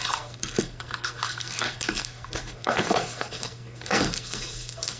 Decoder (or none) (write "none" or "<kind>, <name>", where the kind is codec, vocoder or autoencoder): codec, SNAC